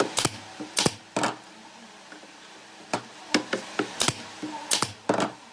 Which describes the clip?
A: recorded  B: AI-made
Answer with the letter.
A